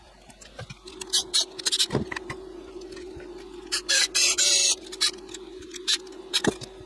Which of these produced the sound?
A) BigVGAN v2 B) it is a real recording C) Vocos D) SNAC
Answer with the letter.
B